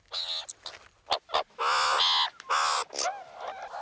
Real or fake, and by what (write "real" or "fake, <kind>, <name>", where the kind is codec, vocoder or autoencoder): real